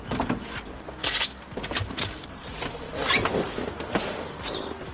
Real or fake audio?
real